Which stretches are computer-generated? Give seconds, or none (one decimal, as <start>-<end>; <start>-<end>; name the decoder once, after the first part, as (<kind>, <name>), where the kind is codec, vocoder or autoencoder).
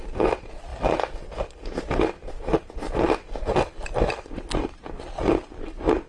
none